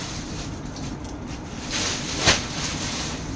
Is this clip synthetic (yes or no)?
yes